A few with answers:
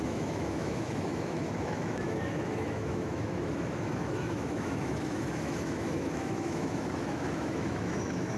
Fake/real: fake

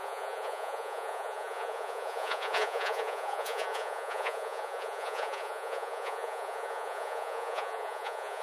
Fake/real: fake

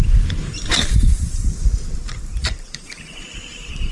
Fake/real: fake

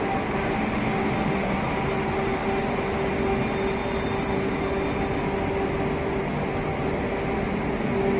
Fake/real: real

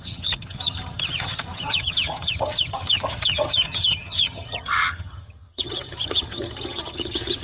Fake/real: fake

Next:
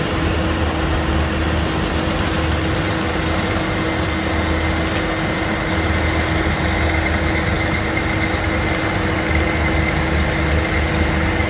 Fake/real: real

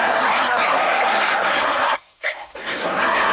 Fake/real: fake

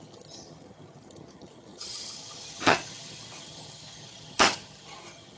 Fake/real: fake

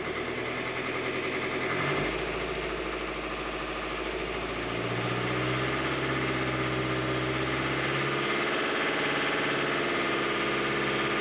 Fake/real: real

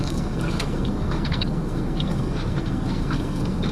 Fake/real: fake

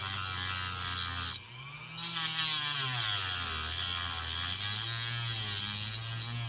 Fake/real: real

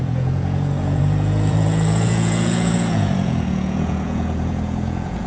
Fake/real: fake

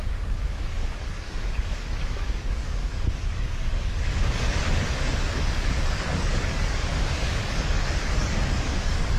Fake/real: fake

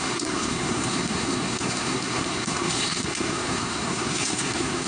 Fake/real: fake